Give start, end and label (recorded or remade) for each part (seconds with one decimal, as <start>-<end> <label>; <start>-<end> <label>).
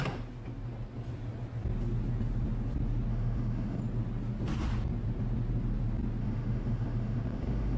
0.0-3.1 recorded; 3.1-3.8 remade; 3.8-6.2 recorded; 6.2-7.8 remade